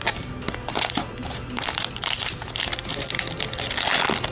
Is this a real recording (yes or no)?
no